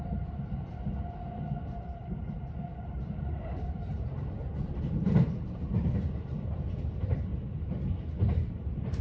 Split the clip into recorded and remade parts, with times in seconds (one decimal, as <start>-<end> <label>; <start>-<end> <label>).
0.0-7.3 remade; 7.3-8.3 recorded; 8.3-9.0 remade